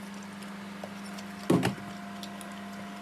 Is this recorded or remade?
recorded